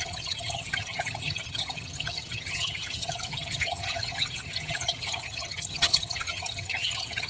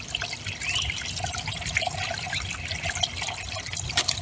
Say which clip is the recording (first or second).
second